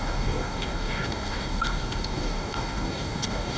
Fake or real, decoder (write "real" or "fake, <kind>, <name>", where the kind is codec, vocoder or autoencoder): fake, codec, DAC